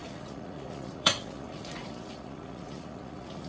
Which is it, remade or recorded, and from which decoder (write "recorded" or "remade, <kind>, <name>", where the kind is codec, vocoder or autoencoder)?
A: remade, vocoder, Vocos